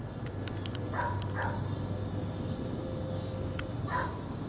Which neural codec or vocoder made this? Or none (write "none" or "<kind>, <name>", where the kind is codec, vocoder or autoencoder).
none